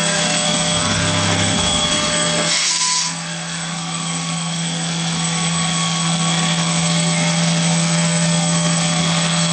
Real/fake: fake